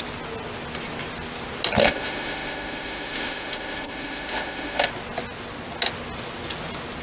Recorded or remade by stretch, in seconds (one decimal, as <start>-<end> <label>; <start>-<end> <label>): 0.0-1.8 recorded; 1.8-4.9 remade; 4.9-7.0 recorded